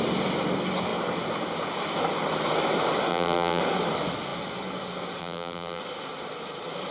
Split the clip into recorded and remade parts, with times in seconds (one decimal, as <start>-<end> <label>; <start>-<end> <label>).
0.0-3.1 recorded; 3.1-3.6 remade; 3.6-5.2 recorded; 5.2-5.8 remade; 5.8-6.9 recorded